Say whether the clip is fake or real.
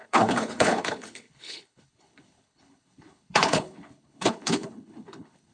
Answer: fake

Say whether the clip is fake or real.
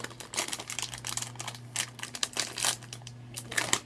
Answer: real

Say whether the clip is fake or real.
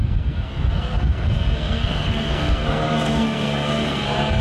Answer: fake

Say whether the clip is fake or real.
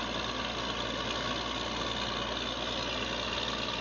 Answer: real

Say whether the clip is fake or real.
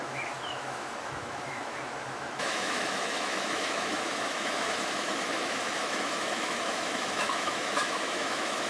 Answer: fake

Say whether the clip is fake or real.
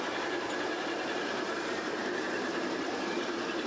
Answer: fake